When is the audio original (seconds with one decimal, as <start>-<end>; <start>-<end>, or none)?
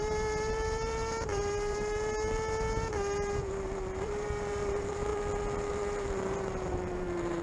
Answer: 5.1-5.7